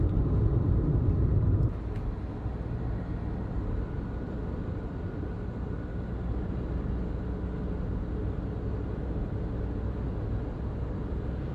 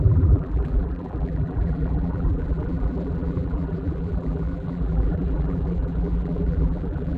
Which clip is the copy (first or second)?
second